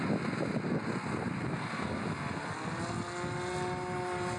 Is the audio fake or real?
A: real